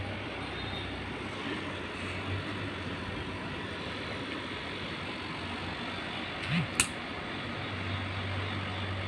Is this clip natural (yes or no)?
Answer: yes